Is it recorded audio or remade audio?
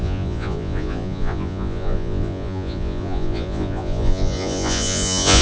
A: remade